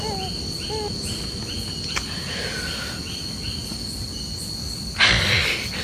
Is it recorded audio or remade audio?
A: recorded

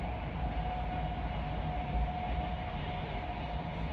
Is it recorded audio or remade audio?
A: recorded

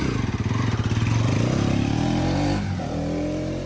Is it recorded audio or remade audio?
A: recorded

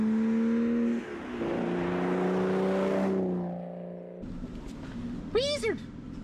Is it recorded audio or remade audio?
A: recorded